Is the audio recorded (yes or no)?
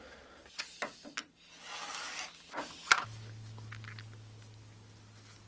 yes